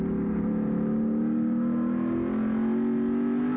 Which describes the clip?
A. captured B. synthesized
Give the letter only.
A